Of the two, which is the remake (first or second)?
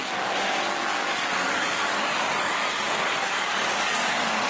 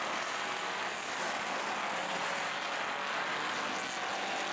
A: first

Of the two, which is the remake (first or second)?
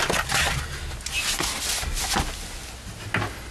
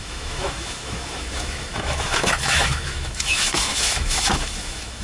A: second